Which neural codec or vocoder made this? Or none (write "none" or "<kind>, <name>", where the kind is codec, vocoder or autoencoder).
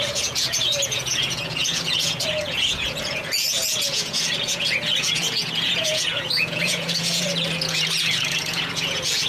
vocoder, Vocos